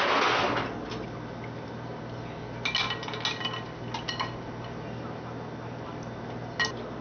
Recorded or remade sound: recorded